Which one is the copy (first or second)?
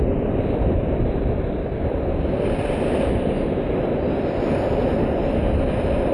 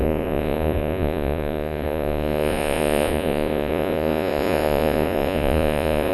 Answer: second